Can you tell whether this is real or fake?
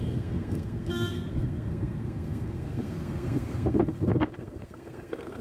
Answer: fake